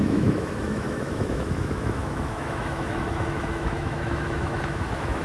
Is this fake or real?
fake